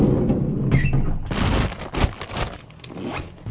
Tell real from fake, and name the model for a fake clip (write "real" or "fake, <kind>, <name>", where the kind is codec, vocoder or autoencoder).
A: real